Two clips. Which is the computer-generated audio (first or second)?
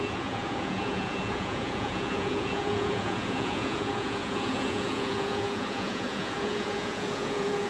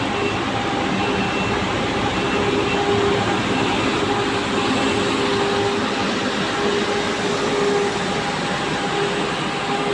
first